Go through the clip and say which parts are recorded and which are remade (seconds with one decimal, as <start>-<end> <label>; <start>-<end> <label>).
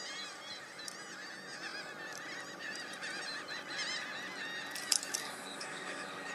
0.0-5.2 recorded; 5.2-6.3 remade